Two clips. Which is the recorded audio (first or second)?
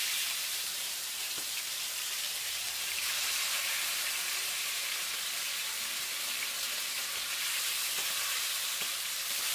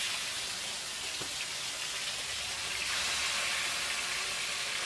second